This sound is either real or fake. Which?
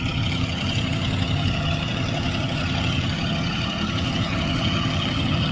fake